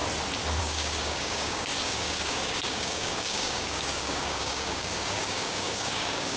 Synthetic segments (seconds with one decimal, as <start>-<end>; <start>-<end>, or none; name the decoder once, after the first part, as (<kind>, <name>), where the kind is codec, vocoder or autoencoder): 0.6-6.4 (codec, DAC)